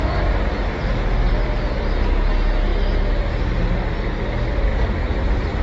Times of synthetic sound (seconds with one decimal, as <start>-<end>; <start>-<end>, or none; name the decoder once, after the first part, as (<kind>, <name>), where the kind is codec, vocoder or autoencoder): 1.4-2.3 (vocoder, BigVGAN v2); 4.7-5.6